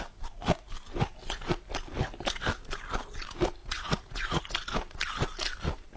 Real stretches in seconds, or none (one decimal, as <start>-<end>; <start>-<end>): 0.0-3.6; 4.4-6.0

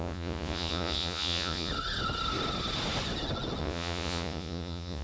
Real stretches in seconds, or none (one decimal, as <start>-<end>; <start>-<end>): 1.7-3.6